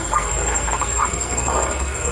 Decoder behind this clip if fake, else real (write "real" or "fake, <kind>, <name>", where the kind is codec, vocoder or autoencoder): fake, codec, SNAC